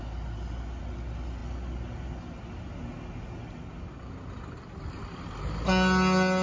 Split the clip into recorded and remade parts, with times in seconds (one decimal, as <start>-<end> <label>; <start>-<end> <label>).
0.0-6.4 recorded

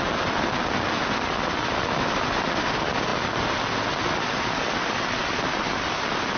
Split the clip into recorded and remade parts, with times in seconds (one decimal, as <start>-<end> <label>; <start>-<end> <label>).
0.0-6.4 recorded

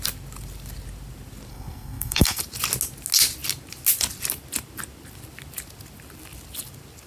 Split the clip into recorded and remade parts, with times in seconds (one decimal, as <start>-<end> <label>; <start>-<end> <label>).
0.0-1.5 recorded; 1.5-2.4 remade; 2.4-7.1 recorded

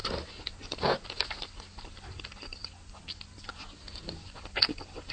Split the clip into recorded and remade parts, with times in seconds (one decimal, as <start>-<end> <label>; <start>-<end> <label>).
0.0-5.1 recorded

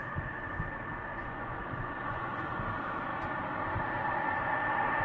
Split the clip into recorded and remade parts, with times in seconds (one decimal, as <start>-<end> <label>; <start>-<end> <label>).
0.0-1.1 recorded; 1.1-2.5 remade; 2.5-5.0 recorded

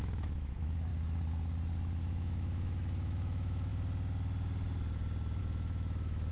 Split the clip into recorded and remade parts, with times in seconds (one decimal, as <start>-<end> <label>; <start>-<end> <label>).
0.0-0.9 remade; 0.9-2.0 recorded; 2.0-3.7 remade; 3.7-5.4 recorded; 5.4-6.3 remade